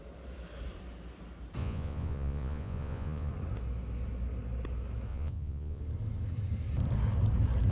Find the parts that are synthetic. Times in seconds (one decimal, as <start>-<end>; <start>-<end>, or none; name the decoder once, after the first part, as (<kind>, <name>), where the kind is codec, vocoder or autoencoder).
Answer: 1.6-3.3 (vocoder, Vocos); 5.1-5.8